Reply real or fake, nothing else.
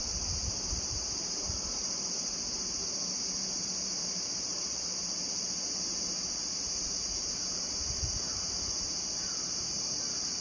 fake